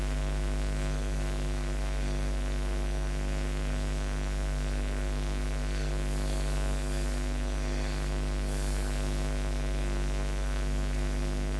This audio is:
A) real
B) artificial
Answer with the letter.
B